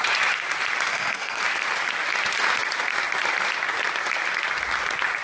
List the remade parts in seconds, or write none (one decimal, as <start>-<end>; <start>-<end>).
0.9-1.4